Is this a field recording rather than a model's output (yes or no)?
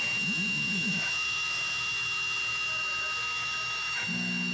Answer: no